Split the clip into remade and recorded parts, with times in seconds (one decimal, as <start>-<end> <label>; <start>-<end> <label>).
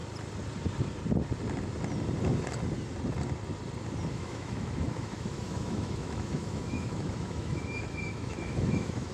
0.0-4.1 recorded; 4.1-9.1 remade